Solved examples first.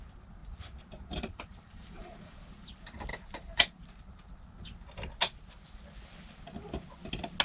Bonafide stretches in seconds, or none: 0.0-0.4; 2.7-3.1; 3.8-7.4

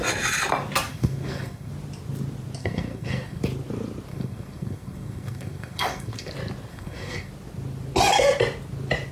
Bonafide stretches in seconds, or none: 0.0-0.9; 1.7-2.6; 3.4-4.1; 6.3-6.7; 7.3-9.1

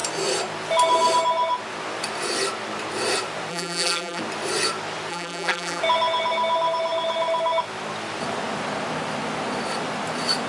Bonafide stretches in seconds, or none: 0.0-3.5; 4.2-5.1; 5.8-10.5

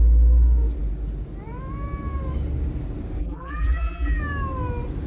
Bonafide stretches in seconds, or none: 0.0-3.2; 4.2-5.1

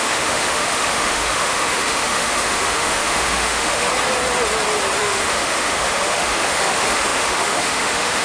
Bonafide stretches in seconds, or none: 3.9-5.0

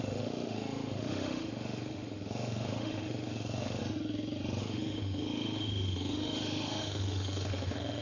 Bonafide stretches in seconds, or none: 3.8-4.6